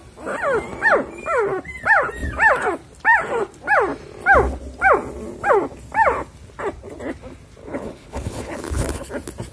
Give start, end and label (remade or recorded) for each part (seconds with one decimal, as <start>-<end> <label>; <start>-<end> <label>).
0.0-7.6 recorded; 7.6-9.1 remade; 9.1-9.5 recorded